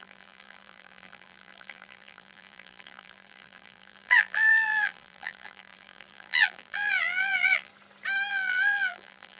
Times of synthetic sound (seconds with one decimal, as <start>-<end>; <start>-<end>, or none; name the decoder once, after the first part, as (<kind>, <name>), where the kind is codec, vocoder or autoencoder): 0.0-7.7 (vocoder, BigVGAN v2); 8.3-9.4